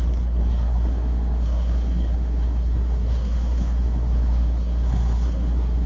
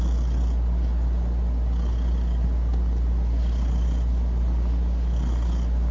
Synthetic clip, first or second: first